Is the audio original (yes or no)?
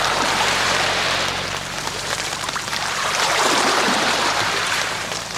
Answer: no